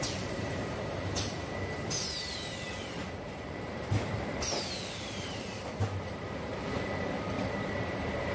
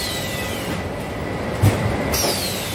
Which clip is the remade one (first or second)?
first